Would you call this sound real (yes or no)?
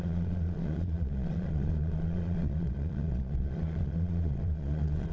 no